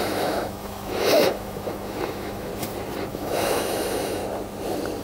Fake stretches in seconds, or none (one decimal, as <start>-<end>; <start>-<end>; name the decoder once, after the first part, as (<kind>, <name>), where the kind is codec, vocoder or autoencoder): 0.0-2.5 (autoencoder, DAC-VAE); 3.1-4.2